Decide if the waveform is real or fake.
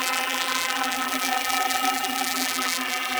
fake